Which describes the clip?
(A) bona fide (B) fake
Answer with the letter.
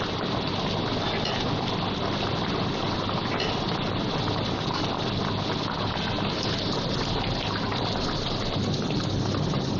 A